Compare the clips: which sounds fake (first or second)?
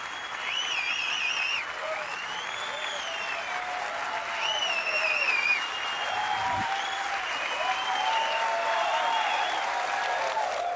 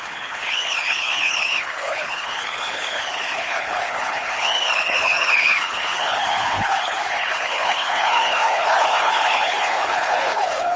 second